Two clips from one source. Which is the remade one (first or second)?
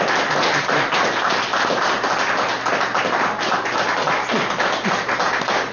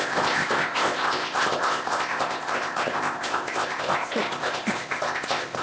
second